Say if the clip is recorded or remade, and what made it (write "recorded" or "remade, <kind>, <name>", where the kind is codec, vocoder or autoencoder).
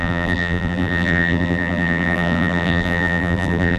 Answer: remade, vocoder, BigVGAN v2